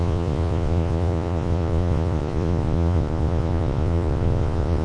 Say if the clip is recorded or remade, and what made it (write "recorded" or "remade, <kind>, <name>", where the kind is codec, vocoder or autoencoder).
remade, vocoder, Vocos